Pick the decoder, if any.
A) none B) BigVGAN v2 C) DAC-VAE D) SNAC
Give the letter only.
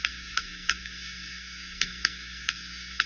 D